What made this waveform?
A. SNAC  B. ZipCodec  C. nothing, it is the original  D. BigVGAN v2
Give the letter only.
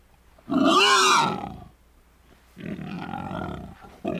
C